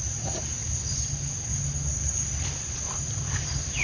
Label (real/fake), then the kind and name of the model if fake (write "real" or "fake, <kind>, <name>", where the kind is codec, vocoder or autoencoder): real